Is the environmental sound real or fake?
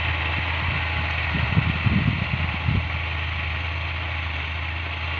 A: real